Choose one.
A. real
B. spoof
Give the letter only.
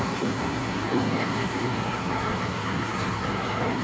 B